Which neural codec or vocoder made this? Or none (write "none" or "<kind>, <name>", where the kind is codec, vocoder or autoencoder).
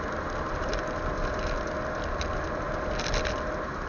none